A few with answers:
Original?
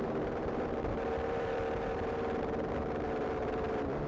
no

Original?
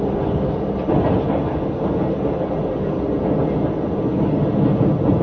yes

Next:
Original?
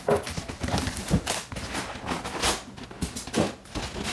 yes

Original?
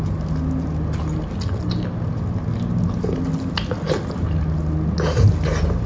yes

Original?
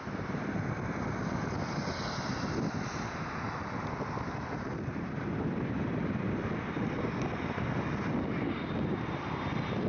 yes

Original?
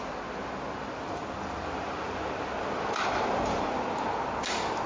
yes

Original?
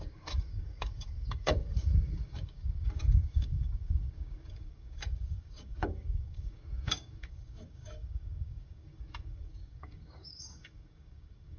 no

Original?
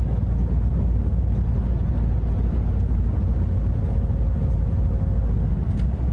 yes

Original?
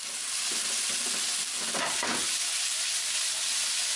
yes